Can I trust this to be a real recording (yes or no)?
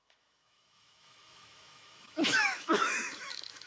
no